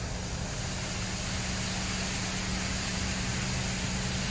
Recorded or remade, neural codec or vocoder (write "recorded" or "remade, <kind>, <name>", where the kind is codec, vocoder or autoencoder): recorded